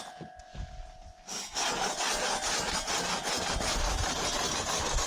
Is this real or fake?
real